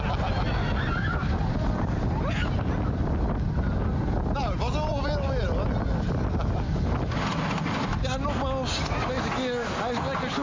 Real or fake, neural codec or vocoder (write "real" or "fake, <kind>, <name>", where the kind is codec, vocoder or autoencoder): real